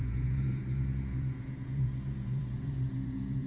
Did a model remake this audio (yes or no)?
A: yes